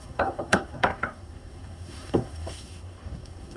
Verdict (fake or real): fake